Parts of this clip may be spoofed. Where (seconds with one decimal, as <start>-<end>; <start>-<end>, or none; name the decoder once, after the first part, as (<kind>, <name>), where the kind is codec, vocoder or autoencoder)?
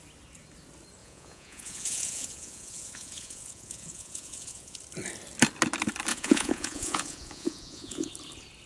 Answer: 1.0-4.8 (vocoder, Vocos); 6.1-8.1